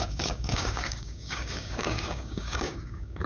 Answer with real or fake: fake